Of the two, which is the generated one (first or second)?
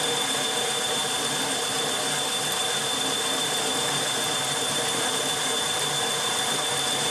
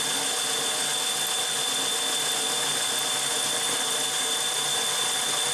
first